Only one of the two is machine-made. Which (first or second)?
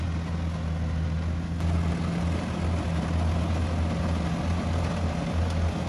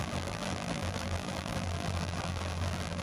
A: second